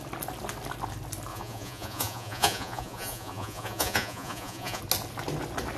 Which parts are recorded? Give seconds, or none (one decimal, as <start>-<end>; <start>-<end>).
0.0-1.3; 4.8-5.8

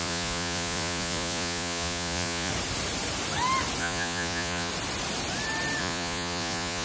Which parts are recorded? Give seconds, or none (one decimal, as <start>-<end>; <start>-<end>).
2.5-3.8; 4.7-5.8

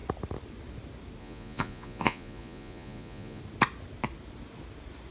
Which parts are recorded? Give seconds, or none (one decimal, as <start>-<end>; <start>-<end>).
0.0-1.2; 3.4-5.1

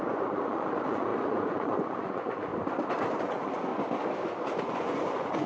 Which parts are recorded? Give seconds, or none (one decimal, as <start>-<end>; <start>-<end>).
2.5-3.2; 3.7-4.6

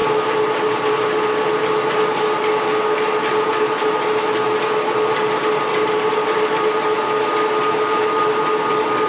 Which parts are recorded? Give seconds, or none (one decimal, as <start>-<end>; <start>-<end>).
0.0-9.1

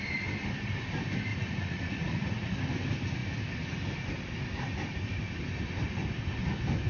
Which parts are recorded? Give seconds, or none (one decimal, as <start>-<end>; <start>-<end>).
0.0-1.3; 2.6-6.9

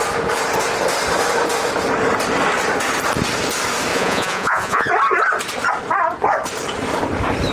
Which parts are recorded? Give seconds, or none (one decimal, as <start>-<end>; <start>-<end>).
0.0-3.9; 4.9-7.5